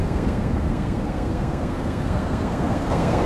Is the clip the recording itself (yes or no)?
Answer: no